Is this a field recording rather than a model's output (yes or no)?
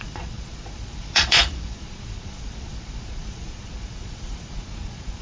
no